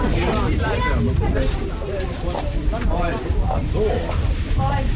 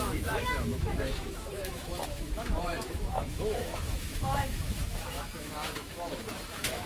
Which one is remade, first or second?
second